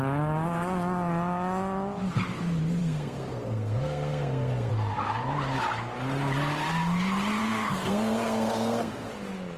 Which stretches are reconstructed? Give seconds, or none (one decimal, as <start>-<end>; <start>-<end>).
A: 2.8-4.7; 7.4-9.1